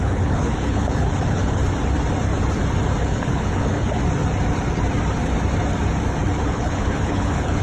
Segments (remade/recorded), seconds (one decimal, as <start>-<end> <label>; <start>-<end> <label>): 0.0-1.6 remade; 1.6-3.0 recorded; 3.0-4.0 remade; 4.0-6.2 recorded; 6.2-7.6 remade